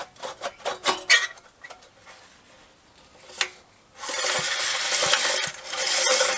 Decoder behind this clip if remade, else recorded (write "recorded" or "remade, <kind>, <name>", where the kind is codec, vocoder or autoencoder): recorded